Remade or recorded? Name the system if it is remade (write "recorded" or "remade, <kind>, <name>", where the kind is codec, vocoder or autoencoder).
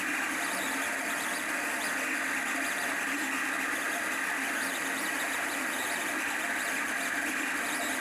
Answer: recorded